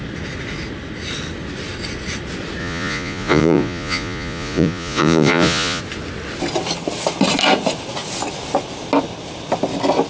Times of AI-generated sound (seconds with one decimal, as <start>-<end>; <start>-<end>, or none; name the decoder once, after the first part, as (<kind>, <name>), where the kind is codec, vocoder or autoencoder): 2.6-5.8 (vocoder, Vocos)